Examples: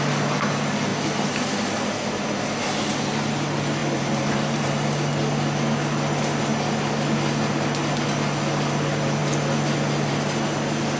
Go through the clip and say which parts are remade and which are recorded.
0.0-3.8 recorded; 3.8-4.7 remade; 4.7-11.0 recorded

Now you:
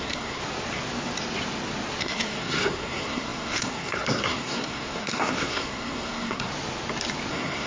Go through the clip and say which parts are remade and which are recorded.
0.0-0.4 remade; 0.4-2.0 recorded; 2.0-6.5 remade; 6.5-7.3 recorded; 7.3-7.7 remade

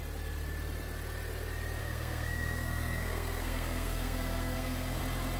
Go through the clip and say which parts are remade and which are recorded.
0.0-1.8 recorded; 1.8-5.0 remade; 5.0-5.4 recorded

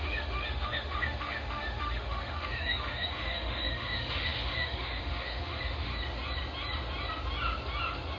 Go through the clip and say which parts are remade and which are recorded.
0.0-5.9 remade; 5.9-8.2 recorded

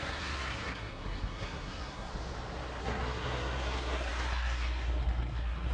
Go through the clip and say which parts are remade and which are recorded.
0.0-2.1 remade; 2.1-2.8 recorded; 2.8-5.7 remade

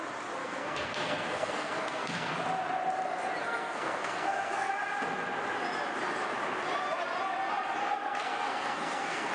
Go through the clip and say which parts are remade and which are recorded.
0.0-0.4 recorded; 0.4-2.3 remade; 2.3-3.4 recorded; 3.4-4.7 remade; 4.7-7.8 recorded; 7.8-9.3 remade

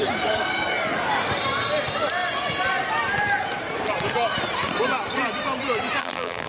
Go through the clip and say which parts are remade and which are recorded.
0.0-6.0 recorded; 6.0-6.5 remade